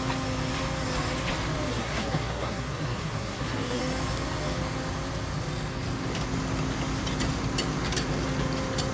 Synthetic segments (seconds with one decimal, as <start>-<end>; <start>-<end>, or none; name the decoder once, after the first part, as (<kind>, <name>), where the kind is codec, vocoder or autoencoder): 1.7-3.8 (codec, SNAC)